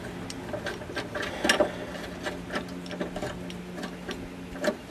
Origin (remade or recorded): recorded